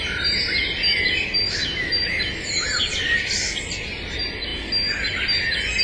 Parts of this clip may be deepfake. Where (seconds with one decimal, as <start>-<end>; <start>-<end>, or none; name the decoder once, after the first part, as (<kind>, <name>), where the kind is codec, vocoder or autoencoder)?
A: none